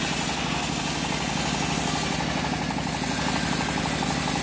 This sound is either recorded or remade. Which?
recorded